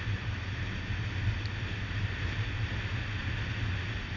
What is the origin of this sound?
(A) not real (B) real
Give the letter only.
B